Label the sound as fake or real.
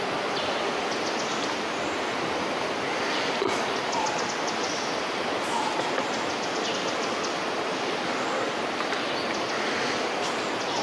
real